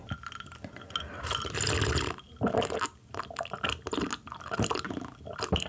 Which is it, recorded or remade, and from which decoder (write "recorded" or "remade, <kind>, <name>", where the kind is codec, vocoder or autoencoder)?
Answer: recorded